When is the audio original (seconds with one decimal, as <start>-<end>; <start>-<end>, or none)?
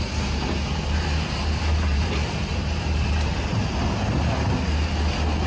0.0-1.9; 3.6-5.5